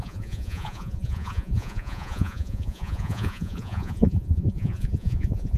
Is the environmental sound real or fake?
fake